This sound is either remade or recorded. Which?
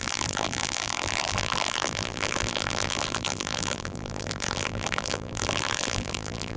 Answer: remade